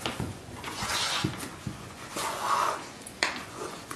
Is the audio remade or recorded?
remade